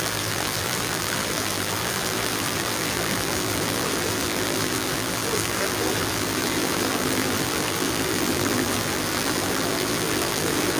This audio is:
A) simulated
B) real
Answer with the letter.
A